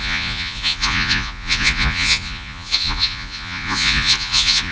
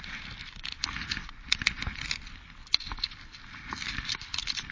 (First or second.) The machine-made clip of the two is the first